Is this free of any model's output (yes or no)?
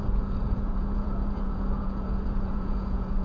no